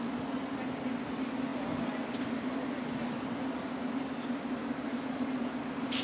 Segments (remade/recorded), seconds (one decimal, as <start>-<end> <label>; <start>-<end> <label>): 0.0-6.0 recorded